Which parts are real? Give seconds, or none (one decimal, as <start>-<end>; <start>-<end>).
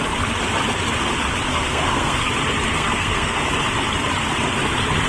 0.0-1.5; 2.3-2.7; 3.4-5.1